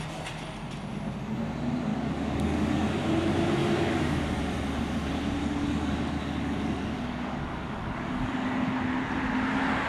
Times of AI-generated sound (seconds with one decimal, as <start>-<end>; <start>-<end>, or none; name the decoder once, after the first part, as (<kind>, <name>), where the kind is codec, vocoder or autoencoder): 1.9-3.0 (codec, DAC); 3.6-4.4; 5.4-8.3